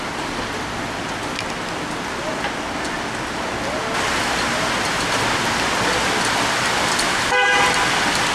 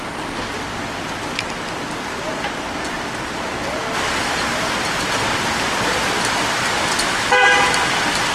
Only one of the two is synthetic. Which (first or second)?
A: second